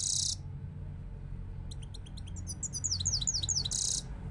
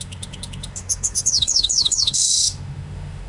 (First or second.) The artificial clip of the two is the second